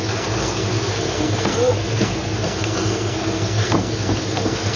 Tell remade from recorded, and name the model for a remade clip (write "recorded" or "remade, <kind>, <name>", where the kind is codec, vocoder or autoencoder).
remade, codec, SNAC